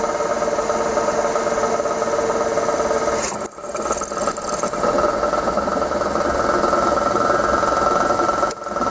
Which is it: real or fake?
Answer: real